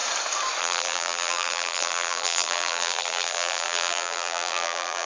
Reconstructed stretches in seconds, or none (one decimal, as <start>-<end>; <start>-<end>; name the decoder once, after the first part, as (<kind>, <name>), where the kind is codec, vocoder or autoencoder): 0.6-5.1 (vocoder, BigVGAN v2)